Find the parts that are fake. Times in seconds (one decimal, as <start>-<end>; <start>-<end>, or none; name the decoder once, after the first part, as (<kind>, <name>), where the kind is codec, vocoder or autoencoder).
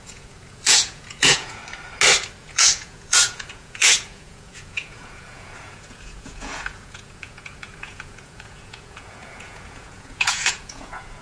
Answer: 0.0-1.6 (vocoder, Vocos); 2.4-11.2